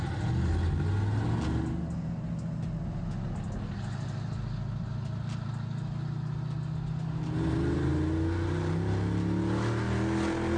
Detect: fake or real real